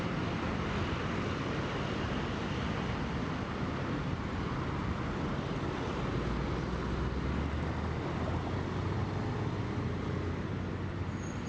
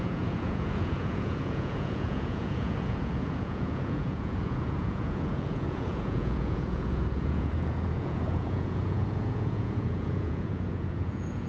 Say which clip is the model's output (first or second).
second